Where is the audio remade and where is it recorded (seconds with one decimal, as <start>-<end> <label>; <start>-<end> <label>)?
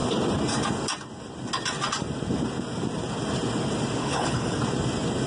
0.0-4.0 recorded; 4.0-4.6 remade; 4.6-5.3 recorded